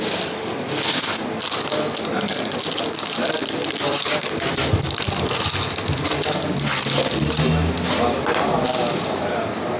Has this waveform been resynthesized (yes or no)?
no